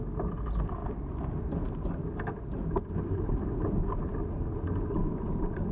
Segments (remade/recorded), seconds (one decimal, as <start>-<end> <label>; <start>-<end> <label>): 0.0-5.7 recorded